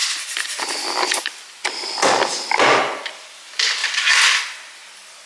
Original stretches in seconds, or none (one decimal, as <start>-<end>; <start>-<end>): 3.8-4.7